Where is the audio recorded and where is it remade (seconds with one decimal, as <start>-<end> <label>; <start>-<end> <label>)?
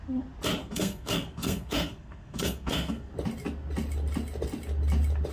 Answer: 0.0-0.6 recorded; 0.6-3.1 remade; 3.1-5.3 recorded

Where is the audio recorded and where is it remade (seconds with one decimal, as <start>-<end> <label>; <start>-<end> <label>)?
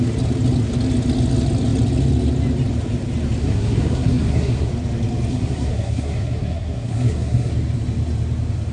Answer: 0.0-3.4 recorded; 3.4-4.7 remade; 4.7-5.3 recorded; 5.3-7.5 remade; 7.5-8.7 recorded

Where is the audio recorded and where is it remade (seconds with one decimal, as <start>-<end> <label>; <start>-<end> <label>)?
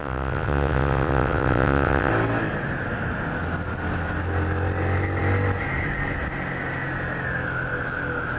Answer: 0.0-2.1 remade; 2.1-8.4 recorded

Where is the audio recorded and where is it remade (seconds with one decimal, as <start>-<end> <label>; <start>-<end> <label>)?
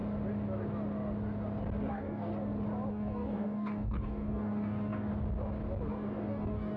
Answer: 0.0-1.9 recorded; 1.9-2.3 remade; 2.3-2.9 recorded; 2.9-5.1 remade; 5.1-5.9 recorded; 5.9-6.8 remade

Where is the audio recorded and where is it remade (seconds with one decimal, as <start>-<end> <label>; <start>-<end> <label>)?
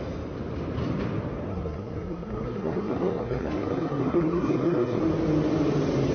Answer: 0.0-1.5 recorded; 1.5-5.0 remade; 5.0-6.1 recorded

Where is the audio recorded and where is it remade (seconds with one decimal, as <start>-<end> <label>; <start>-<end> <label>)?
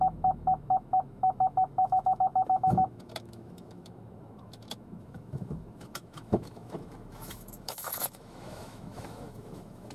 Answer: 0.0-9.9 remade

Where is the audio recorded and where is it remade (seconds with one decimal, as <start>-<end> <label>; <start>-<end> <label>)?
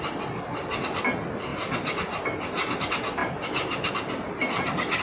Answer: 0.0-3.2 recorded; 3.2-3.9 remade; 3.9-5.0 recorded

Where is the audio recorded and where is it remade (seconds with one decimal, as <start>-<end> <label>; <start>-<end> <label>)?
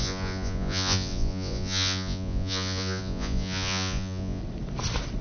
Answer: 0.0-4.4 remade; 4.4-5.2 recorded